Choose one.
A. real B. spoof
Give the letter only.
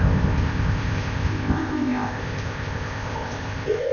B